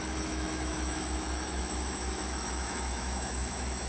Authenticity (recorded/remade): remade